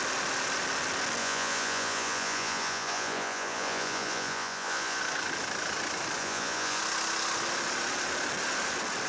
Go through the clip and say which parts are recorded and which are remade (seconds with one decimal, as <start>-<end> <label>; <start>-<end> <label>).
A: 0.0-1.2 recorded; 1.2-5.0 remade; 5.0-6.2 recorded; 6.2-6.8 remade; 6.8-9.1 recorded